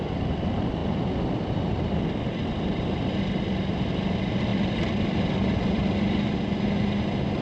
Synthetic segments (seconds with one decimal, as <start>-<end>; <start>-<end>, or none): none